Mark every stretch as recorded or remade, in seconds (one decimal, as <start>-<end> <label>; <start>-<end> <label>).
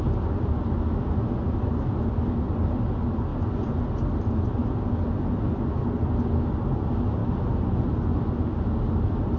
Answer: 0.0-9.4 recorded